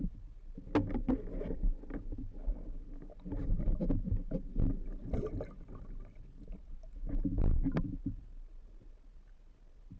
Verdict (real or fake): real